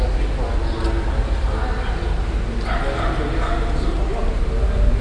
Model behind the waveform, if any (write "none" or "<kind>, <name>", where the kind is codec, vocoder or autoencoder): none